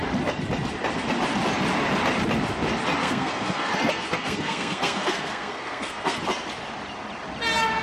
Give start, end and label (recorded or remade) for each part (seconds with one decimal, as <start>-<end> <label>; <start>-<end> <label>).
0.0-3.0 recorded; 3.0-6.2 remade; 6.2-7.8 recorded